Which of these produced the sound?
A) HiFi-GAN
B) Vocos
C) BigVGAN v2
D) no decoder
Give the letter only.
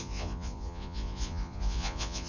B